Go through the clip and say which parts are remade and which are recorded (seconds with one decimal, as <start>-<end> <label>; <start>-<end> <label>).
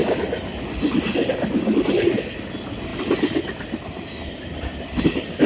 0.0-5.5 recorded